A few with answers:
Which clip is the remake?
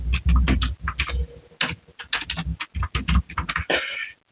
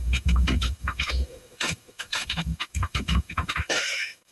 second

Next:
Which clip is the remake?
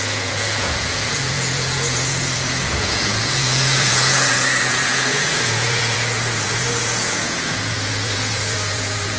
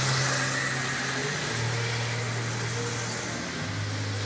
first